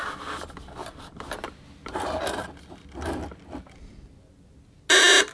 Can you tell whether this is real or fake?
real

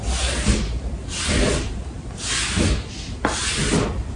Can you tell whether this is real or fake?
real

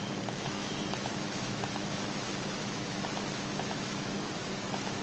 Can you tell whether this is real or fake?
fake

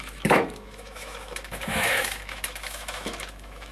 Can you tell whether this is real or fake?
fake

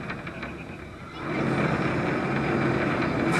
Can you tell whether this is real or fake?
real